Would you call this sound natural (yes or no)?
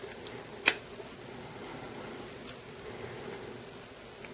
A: yes